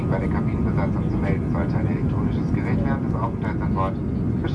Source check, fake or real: real